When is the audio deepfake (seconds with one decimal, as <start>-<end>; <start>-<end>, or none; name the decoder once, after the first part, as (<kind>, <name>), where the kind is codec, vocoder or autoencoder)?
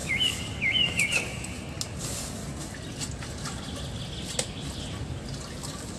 0.0-1.5 (codec, DAC); 2.0-2.4; 5.5-6.0